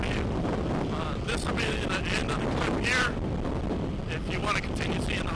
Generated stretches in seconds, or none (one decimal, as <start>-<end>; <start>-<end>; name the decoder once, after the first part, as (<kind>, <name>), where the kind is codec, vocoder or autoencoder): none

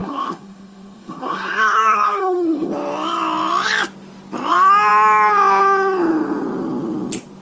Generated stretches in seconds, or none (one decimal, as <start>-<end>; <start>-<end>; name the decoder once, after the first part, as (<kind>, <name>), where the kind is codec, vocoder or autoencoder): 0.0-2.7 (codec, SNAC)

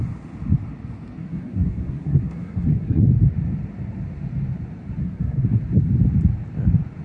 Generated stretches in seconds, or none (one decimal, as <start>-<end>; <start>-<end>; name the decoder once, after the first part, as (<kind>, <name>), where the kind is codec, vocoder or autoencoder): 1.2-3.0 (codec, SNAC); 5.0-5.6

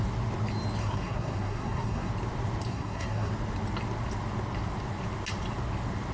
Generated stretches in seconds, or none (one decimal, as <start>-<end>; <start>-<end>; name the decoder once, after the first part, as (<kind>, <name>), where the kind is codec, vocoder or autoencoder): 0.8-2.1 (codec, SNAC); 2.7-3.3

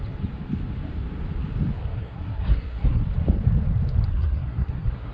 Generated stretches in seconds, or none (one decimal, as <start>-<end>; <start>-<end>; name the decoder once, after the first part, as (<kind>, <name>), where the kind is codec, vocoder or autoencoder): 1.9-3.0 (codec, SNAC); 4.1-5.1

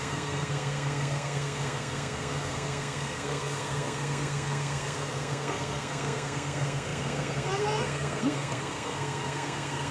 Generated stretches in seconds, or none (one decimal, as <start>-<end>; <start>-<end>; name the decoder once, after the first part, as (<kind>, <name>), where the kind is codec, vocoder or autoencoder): 0.0-9.9 (codec, SNAC)

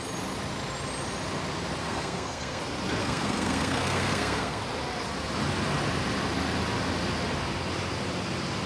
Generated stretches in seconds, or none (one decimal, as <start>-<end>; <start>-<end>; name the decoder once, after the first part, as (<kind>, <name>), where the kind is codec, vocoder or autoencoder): 1.8-2.6 (codec, SNAC); 3.0-4.6

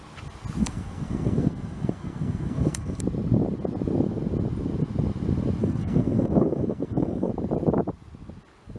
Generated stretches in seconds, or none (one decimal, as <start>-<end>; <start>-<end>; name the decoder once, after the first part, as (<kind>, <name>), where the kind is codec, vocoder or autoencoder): 0.6-3.0 (codec, SNAC); 5.6-7.3